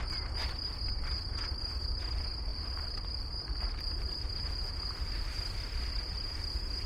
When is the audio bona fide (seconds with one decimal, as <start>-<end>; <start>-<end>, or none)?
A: 0.0-6.9